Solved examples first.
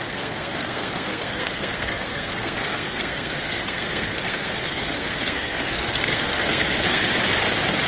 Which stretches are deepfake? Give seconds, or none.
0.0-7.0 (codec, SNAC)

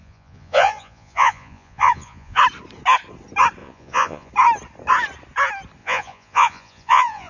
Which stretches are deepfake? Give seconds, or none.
0.0-2.4 (vocoder, Vocos); 3.6-4.3; 5.8-7.3